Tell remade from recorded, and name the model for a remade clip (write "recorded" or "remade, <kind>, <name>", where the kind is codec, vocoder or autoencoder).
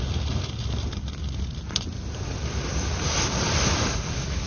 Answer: recorded